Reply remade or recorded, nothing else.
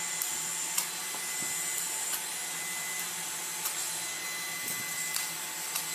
recorded